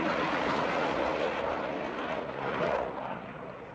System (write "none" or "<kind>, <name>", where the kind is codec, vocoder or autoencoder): vocoder, Vocos